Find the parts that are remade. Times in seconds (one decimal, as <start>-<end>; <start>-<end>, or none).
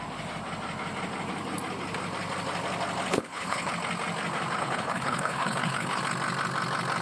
3.1-3.7; 4.6-6.0